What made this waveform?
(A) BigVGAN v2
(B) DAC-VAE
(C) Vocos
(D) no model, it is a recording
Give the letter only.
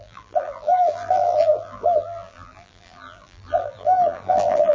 A